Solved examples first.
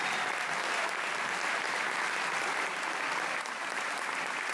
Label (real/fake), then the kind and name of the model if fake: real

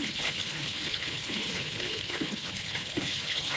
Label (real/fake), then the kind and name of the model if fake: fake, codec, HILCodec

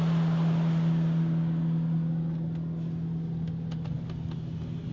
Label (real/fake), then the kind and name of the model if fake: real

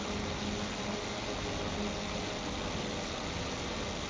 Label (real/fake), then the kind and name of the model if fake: real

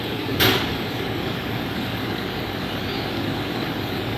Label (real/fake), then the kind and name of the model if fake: fake, codec, DAC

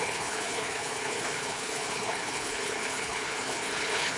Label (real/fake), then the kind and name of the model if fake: fake, codec, HILCodec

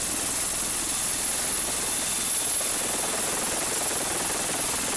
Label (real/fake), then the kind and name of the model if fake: real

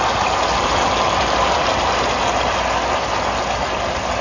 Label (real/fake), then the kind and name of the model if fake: real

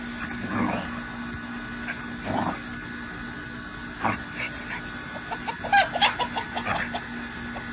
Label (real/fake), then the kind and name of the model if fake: real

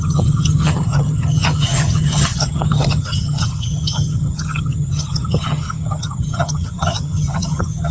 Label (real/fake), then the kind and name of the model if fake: fake, vocoder, HiFi-GAN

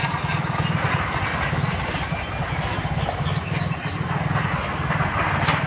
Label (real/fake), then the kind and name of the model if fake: real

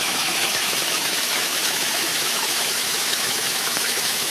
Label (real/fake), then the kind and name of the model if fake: fake, autoencoder, DAC-VAE